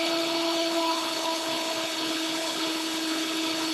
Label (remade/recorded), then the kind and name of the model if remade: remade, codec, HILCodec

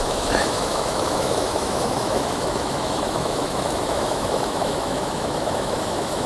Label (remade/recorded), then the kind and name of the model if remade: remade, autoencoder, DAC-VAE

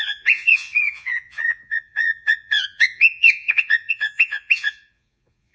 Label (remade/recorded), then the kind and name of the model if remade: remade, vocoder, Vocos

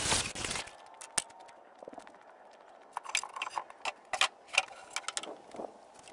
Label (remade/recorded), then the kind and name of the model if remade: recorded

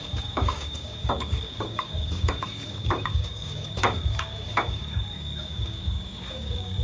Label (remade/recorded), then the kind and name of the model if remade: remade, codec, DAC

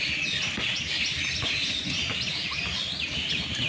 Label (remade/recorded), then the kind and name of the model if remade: recorded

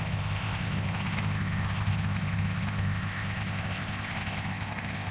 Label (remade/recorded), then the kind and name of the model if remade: remade, codec, ZipCodec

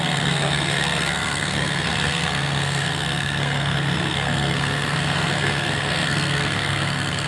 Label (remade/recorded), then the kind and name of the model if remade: remade, codec, SNAC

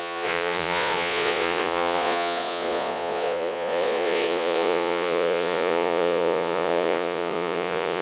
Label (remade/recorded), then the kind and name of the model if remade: remade, vocoder, Vocos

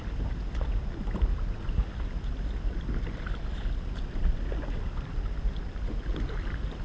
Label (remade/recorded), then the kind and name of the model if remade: recorded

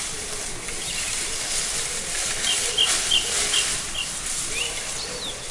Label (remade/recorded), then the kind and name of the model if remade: recorded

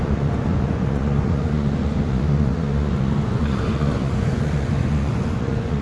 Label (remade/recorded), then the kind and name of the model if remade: remade, vocoder, Vocos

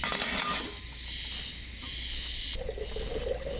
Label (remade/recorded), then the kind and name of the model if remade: recorded